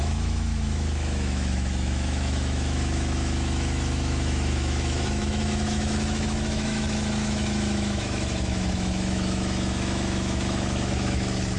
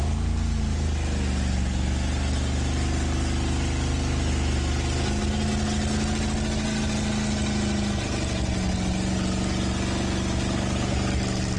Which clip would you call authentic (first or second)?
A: second